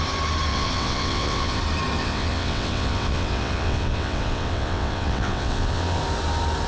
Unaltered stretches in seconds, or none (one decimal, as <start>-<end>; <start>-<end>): 0.0-0.5; 1.6-2.0; 6.0-6.7